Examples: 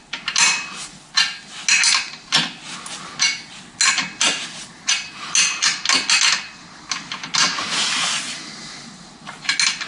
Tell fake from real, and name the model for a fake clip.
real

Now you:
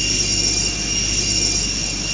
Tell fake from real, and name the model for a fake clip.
real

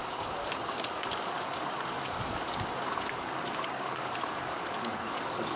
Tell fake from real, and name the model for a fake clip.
fake, codec, DAC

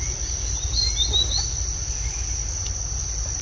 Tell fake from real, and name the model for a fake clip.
real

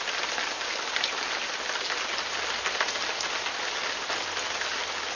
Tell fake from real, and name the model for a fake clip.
real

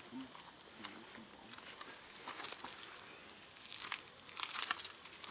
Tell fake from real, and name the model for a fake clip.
real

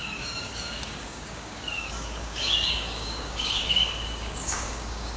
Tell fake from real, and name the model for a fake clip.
fake, codec, DAC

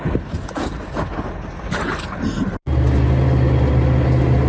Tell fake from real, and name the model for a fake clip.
real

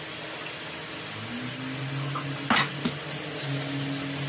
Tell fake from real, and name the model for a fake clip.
real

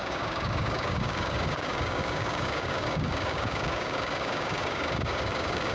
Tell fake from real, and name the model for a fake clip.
fake, codec, DAC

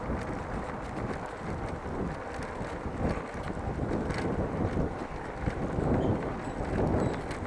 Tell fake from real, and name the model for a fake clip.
real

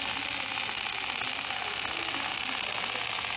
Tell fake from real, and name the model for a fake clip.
real